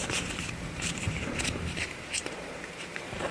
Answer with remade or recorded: remade